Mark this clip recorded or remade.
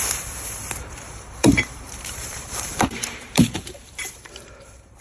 remade